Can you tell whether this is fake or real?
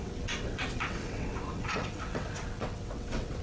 fake